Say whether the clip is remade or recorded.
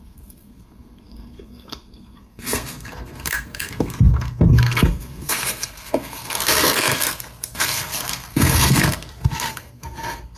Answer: remade